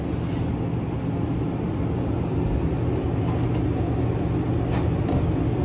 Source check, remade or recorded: recorded